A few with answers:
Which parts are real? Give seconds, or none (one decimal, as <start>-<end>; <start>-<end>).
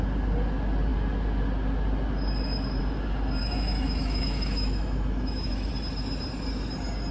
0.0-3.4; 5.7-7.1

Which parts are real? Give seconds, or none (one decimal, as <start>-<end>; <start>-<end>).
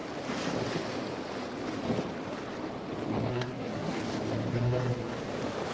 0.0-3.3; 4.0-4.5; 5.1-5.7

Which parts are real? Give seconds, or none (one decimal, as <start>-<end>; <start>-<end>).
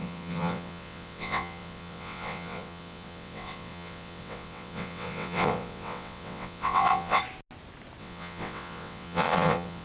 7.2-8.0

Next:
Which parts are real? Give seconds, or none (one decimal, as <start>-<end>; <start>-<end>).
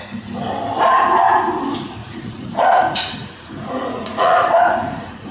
0.0-2.0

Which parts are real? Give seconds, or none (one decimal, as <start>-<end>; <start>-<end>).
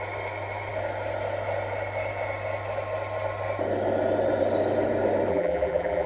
0.0-5.3